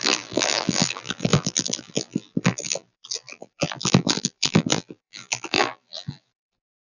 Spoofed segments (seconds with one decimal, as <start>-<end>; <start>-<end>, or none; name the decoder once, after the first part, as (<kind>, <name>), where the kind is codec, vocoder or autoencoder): 0.0-6.9 (vocoder, BigVGAN v2)